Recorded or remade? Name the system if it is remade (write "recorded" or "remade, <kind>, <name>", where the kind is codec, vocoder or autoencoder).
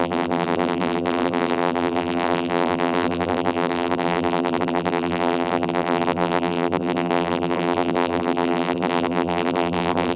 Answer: remade, vocoder, BigVGAN v2